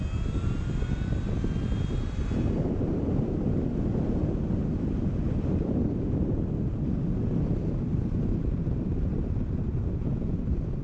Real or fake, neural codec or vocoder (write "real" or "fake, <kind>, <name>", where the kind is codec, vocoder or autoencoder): real